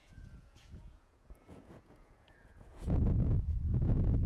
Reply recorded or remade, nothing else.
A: remade